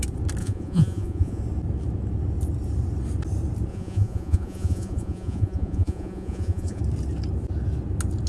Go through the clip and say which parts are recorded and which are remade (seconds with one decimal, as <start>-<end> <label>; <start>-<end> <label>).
0.0-0.4 recorded; 0.4-1.4 remade; 1.4-3.7 recorded; 3.7-6.8 remade; 6.8-8.3 recorded